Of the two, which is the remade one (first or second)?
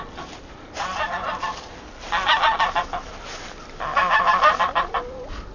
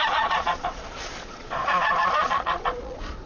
second